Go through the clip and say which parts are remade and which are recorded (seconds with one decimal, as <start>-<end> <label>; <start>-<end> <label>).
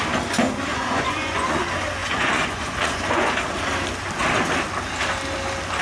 0.0-0.7 recorded; 0.7-1.6 remade; 1.6-2.0 recorded; 2.0-3.3 remade; 3.3-5.8 recorded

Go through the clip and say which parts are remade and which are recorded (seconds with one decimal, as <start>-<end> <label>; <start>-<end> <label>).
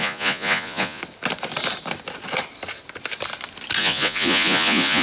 0.0-1.0 remade; 1.0-3.8 recorded; 3.8-5.0 remade